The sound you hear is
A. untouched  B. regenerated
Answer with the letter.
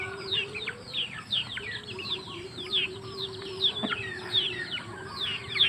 B